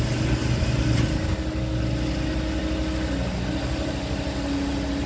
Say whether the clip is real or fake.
real